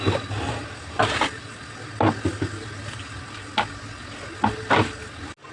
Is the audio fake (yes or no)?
no